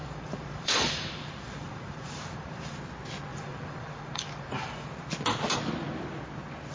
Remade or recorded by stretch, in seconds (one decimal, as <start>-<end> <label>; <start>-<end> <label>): 0.0-2.8 remade; 2.8-3.3 recorded; 3.3-4.9 remade; 4.9-6.7 recorded